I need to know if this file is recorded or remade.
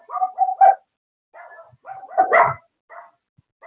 recorded